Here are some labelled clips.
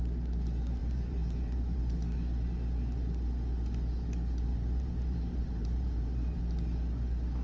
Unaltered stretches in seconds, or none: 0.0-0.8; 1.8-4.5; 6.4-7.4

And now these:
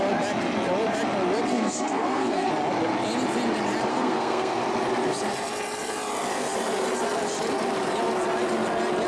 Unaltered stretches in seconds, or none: 0.0-1.5; 2.5-3.9; 4.6-9.1

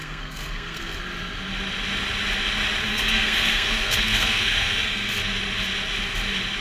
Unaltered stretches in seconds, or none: 1.0-2.9; 5.1-6.6